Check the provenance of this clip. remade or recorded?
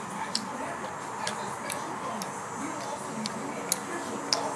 recorded